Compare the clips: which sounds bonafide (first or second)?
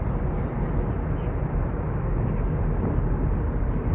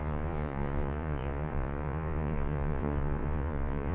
first